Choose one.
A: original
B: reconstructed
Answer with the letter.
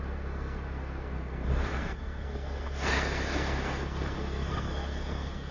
B